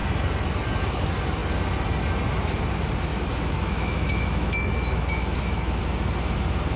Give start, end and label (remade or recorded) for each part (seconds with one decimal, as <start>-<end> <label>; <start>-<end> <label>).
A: 0.0-3.1 recorded; 3.1-5.8 remade; 5.8-6.8 recorded